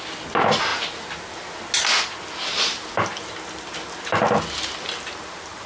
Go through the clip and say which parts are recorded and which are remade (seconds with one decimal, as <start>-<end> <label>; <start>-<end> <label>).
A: 0.0-5.7 recorded